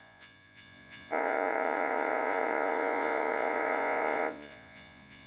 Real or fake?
fake